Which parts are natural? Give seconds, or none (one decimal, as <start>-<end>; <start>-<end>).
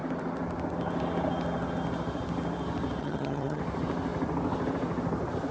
0.0-3.0; 3.6-5.5